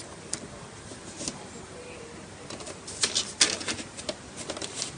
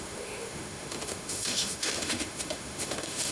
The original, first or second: first